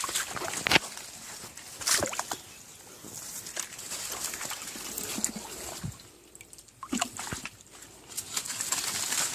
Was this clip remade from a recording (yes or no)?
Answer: no